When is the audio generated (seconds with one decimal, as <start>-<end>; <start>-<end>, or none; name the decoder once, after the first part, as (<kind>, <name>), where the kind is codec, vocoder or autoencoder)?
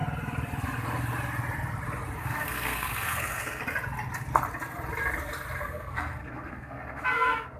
2.2-3.6 (codec, SNAC); 5.6-7.6